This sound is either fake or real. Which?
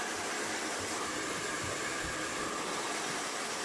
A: fake